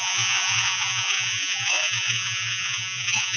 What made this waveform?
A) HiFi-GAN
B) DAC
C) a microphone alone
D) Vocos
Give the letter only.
D